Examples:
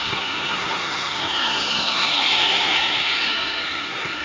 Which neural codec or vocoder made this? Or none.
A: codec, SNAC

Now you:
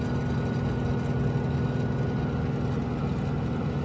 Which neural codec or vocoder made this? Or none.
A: none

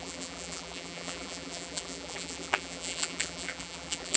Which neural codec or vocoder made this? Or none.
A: vocoder, BigVGAN v2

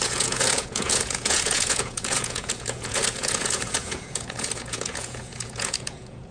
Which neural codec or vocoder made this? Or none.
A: vocoder, Vocos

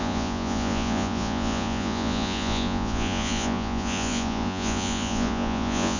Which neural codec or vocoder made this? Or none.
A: vocoder, Vocos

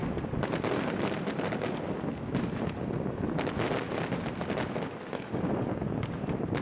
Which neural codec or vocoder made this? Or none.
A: none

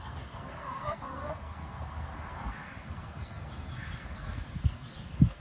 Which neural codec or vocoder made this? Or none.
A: codec, SNAC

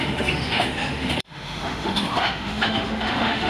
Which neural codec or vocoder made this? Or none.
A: autoencoder, DAC-VAE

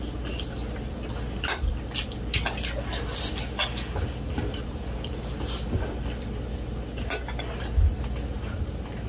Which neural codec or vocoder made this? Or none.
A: none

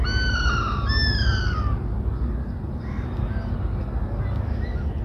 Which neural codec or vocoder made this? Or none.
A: none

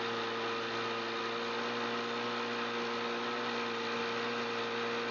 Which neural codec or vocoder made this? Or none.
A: none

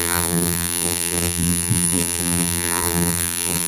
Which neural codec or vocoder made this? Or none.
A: vocoder, BigVGAN v2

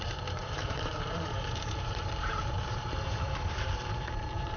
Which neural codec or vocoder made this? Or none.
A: vocoder, BigVGAN v2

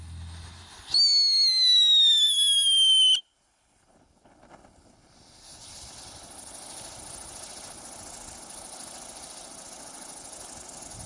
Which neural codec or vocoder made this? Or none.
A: none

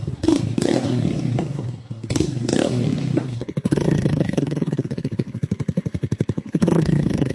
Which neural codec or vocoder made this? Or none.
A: codec, SNAC